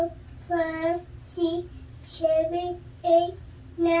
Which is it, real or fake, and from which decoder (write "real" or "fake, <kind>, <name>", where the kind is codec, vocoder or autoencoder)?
real